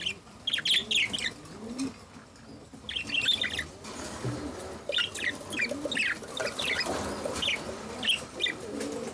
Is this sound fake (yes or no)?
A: no